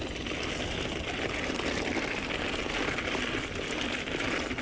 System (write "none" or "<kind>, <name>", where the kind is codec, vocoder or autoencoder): none